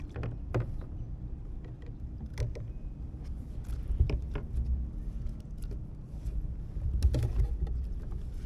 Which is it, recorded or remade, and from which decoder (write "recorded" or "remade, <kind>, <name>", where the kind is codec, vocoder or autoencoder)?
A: recorded